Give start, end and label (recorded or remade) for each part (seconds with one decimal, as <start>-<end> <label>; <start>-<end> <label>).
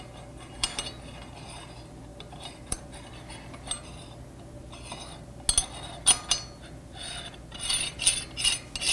0.0-2.1 recorded; 2.1-2.8 remade; 2.8-8.9 recorded